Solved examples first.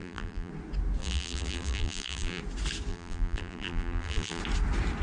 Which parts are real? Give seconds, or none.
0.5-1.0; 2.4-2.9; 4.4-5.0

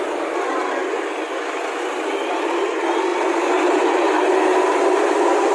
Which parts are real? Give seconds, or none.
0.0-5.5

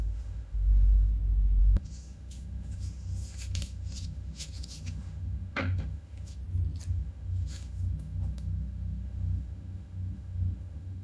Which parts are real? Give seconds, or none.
1.1-1.6; 6.4-6.9

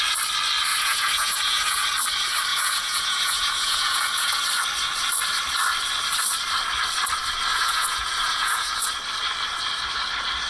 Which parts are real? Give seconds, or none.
0.0-0.7; 1.9-2.5; 4.4-7.5; 8.9-10.5

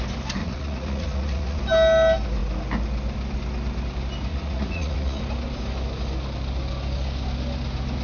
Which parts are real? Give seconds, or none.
0.0-0.4; 1.6-4.3; 5.2-8.0

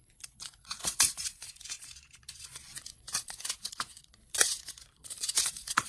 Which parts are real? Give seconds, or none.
none

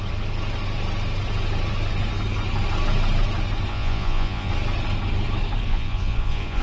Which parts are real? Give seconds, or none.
0.0-3.7; 4.5-5.7

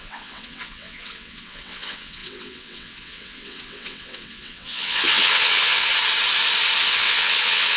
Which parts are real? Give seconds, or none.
5.9-6.8